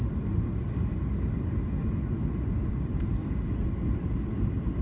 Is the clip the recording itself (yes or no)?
yes